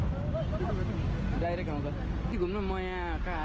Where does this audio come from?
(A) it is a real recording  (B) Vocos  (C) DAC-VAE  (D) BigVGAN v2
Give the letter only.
A